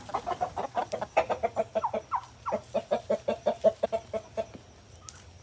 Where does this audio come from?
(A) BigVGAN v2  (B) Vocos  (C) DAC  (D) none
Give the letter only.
D